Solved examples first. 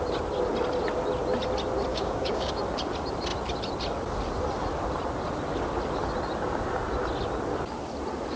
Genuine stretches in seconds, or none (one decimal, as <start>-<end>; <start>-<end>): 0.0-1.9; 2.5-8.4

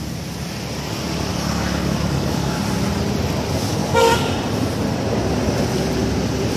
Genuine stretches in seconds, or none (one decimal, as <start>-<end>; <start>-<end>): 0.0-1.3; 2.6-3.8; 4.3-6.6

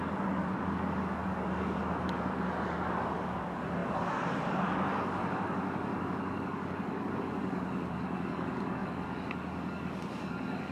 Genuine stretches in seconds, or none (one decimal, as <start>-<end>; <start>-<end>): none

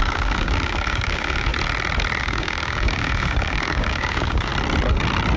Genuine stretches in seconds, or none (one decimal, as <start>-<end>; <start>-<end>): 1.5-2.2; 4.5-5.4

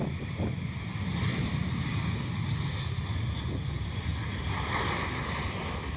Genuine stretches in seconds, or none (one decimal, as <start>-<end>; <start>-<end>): 0.0-1.6; 2.2-6.0

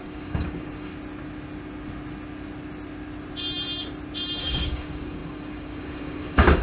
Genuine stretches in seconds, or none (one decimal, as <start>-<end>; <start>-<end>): 0.9-4.4